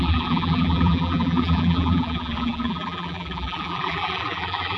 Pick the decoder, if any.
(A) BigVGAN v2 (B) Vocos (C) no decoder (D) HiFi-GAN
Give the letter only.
A